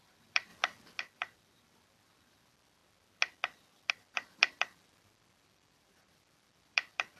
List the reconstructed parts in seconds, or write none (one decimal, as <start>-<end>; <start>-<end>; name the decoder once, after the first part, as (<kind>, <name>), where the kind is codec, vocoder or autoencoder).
0.0-0.5 (vocoder, BigVGAN v2); 1.0-2.8; 3.9-7.2

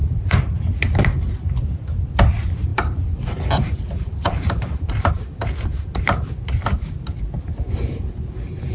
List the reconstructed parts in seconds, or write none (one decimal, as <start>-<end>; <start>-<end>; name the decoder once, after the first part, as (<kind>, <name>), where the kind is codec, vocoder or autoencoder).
0.0-0.6 (vocoder, BigVGAN v2); 2.7-5.1

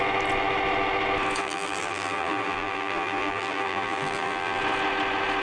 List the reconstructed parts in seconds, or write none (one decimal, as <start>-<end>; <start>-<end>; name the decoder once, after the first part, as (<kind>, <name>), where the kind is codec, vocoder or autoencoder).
1.4-4.6 (vocoder, BigVGAN v2)

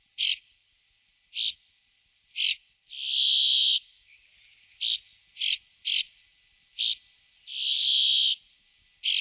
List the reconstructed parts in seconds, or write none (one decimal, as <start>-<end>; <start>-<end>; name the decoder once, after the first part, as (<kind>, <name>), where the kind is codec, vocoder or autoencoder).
none

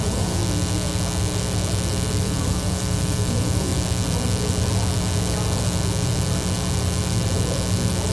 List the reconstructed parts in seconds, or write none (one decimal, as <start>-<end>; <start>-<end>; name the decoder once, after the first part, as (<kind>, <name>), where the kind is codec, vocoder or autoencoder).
0.0-0.4 (vocoder, BigVGAN v2); 2.2-3.7

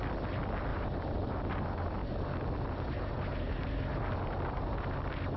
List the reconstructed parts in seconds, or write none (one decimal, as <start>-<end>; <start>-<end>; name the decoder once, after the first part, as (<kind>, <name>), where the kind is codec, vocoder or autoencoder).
0.7-1.4 (vocoder, BigVGAN v2); 2.0-4.7

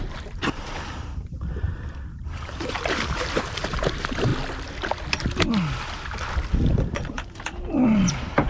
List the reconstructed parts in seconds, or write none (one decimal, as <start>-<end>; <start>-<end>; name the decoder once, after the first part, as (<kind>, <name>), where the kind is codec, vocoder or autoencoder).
0.0-4.3 (vocoder, BigVGAN v2); 8.1-8.5

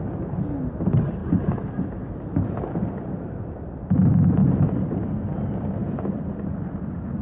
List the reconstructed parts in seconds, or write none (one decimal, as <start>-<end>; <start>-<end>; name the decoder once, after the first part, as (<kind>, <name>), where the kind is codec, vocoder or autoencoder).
4.4-5.1 (vocoder, BigVGAN v2); 5.8-6.7